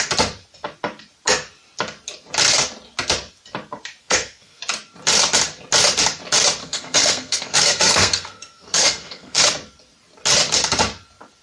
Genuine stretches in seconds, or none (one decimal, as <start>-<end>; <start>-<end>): 0.0-4.0; 4.6-6.6; 9.4-11.4